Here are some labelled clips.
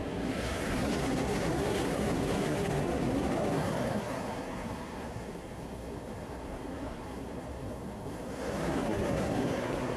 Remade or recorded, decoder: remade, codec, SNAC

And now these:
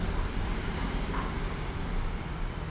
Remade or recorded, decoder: recorded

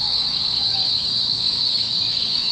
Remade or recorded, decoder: remade, codec, DAC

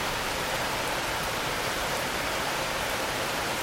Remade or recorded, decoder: remade, vocoder, BigVGAN v2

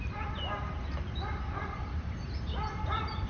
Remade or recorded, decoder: remade, vocoder, BigVGAN v2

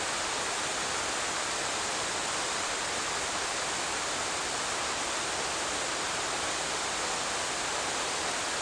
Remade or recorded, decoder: recorded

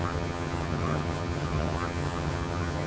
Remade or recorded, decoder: remade, vocoder, HiFi-GAN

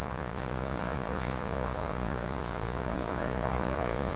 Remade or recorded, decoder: remade, vocoder, Vocos